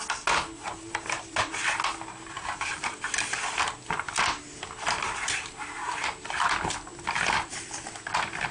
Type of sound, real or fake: real